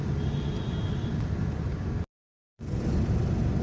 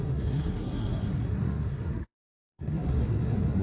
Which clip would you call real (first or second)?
first